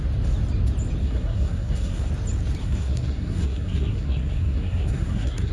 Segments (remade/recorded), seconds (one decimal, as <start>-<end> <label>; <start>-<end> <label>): 0.0-1.0 recorded; 1.0-2.1 remade; 2.1-2.6 recorded; 2.6-5.5 remade